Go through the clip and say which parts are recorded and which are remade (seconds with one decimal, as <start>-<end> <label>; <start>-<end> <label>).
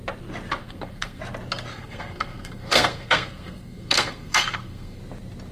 0.0-0.6 recorded; 0.6-1.2 remade; 1.2-1.7 recorded; 1.7-5.0 remade; 5.0-5.5 recorded